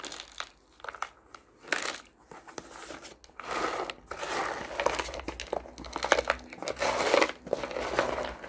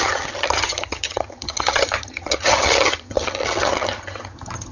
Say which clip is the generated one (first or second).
second